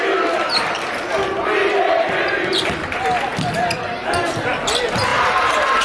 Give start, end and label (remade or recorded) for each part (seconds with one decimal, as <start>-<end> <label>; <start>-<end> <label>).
0.0-5.8 recorded